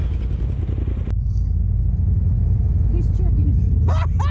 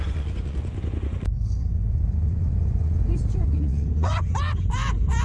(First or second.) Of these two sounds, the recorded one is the first